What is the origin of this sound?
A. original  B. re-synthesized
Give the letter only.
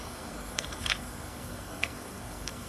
B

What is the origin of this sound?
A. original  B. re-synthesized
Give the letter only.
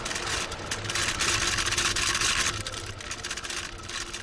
A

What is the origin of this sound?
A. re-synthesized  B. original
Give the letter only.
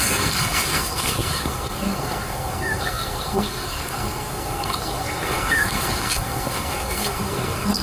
A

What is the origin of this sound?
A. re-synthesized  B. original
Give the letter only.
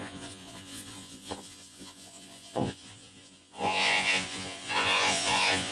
A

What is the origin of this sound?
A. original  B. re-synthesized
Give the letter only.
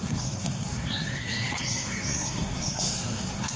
B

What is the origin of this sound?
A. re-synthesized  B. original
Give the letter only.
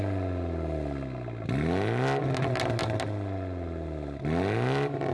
B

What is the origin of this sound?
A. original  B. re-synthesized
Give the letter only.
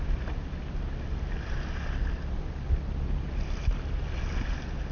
A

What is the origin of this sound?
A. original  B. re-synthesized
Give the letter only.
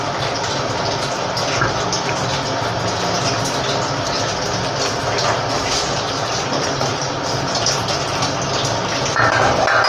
A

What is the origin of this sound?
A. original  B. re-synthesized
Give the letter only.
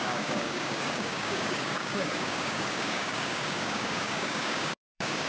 B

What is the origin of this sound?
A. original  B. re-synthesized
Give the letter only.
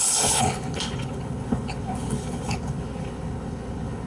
B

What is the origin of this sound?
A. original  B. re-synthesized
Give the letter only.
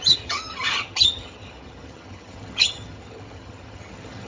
B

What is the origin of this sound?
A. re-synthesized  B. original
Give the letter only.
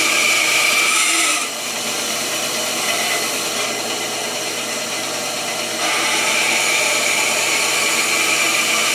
A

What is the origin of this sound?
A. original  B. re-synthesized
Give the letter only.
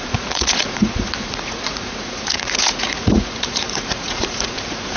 B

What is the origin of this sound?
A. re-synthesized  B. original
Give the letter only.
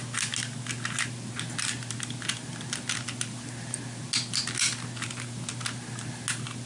B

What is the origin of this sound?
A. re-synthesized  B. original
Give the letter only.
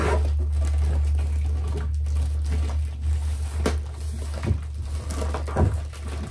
B